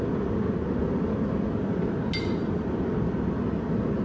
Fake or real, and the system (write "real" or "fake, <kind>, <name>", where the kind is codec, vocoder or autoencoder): real